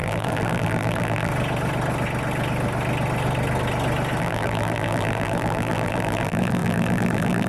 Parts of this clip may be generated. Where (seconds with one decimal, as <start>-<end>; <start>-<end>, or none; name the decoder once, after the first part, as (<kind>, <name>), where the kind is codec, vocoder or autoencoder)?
0.0-1.3 (vocoder, BigVGAN v2); 4.2-7.5